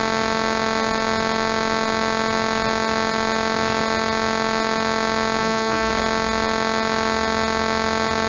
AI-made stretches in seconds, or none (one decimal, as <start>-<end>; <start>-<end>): 5.4-5.9